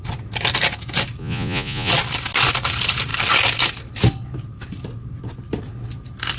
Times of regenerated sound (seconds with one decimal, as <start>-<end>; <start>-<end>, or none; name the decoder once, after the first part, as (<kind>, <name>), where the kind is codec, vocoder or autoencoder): 1.2-1.9 (vocoder, Vocos)

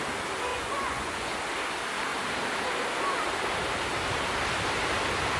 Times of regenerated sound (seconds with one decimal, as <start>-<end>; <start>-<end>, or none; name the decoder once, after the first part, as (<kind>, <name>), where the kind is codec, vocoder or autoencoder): 0.5-1.3 (vocoder, Vocos)

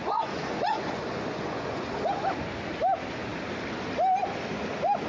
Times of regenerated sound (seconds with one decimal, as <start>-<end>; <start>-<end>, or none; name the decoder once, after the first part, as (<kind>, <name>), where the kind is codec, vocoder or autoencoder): 0.0-1.9 (vocoder, Vocos)